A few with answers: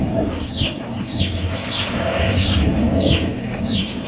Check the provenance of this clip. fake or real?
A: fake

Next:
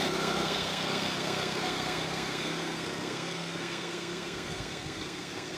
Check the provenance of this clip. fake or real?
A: fake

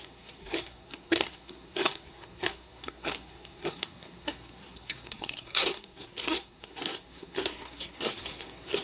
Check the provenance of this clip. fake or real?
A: fake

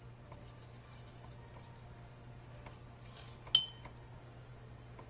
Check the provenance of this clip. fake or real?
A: real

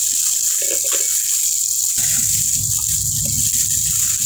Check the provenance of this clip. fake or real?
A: real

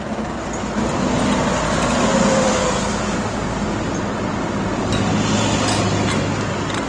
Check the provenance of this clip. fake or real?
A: real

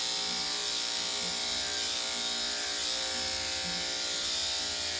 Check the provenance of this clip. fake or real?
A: real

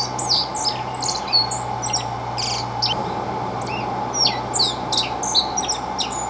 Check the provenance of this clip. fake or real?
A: real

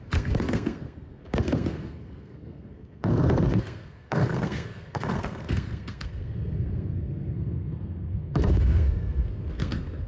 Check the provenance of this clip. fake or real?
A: fake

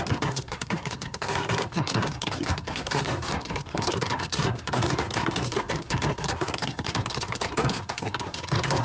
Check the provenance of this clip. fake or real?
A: fake